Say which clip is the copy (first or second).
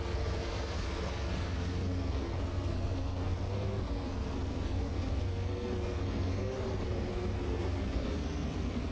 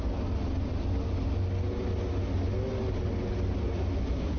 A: first